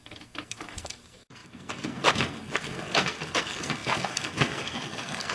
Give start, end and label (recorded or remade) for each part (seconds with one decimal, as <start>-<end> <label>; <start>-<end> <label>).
0.0-5.3 remade